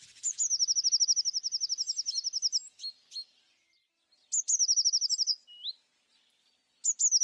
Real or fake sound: real